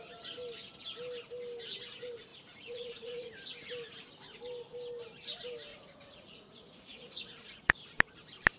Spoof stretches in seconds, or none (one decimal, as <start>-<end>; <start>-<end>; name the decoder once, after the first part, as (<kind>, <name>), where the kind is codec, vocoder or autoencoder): 2.3-3.3 (vocoder, Vocos); 5.7-7.8